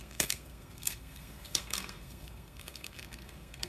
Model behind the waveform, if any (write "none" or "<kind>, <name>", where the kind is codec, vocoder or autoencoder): codec, SNAC